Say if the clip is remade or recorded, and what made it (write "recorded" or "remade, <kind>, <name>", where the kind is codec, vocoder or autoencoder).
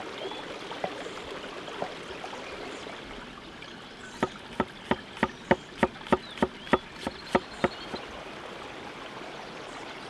recorded